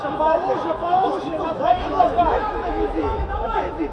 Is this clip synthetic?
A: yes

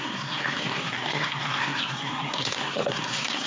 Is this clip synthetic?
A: yes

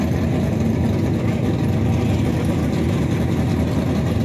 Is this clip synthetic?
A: no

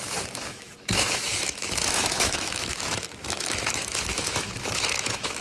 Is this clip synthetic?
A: yes